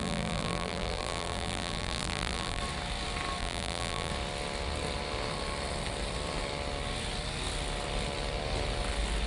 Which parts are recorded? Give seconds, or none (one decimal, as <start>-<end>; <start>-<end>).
2.6-3.4; 4.1-9.3